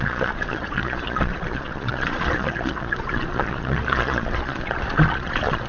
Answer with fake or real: fake